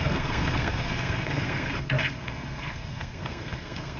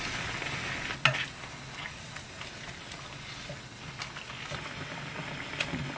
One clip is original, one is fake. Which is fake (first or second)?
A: first